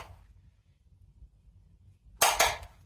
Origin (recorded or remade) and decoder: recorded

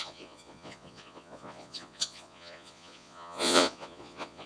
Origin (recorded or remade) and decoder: remade, vocoder, Vocos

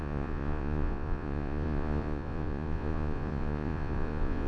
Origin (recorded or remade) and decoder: remade, vocoder, Vocos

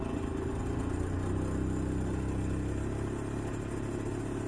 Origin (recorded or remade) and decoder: recorded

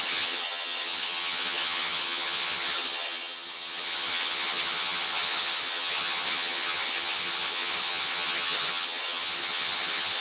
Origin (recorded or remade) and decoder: remade, vocoder, HiFi-GAN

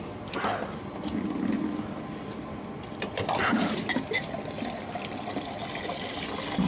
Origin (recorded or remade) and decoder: recorded